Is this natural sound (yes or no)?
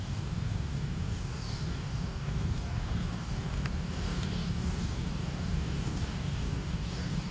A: no